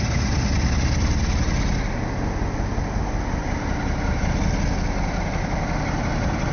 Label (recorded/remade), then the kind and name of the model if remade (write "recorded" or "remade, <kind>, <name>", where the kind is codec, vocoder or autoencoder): recorded